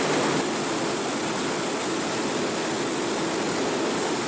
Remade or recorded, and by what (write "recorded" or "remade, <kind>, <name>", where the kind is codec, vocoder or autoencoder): recorded